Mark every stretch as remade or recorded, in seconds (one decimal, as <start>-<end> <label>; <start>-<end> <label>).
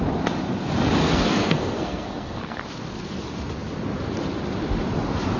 0.0-1.0 recorded; 1.0-2.6 remade; 2.6-5.4 recorded